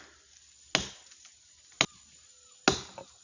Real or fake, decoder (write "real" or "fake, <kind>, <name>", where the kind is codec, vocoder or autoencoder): real